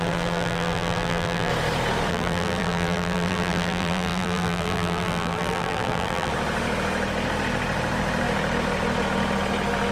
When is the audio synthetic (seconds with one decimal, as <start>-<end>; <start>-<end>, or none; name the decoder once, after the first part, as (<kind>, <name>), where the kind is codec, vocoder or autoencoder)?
0.0-1.5 (vocoder, BigVGAN v2); 2.1-6.3